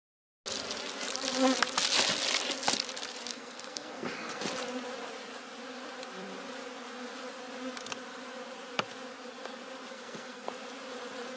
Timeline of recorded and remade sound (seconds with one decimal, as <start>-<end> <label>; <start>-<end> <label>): 0.0-3.3 recorded; 3.3-4.4 remade; 4.4-9.9 recorded; 9.9-10.5 remade; 10.5-11.4 recorded